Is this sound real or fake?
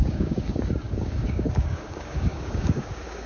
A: fake